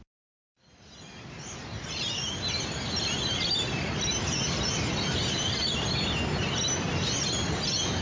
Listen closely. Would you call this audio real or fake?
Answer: real